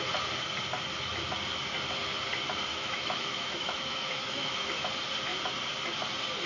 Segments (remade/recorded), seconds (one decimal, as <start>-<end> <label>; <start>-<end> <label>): 0.0-2.7 recorded; 2.7-4.7 remade; 4.7-6.5 recorded